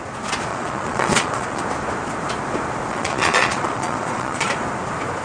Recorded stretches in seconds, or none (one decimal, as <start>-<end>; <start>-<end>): 0.0-0.5; 1.6-2.9; 4.5-5.2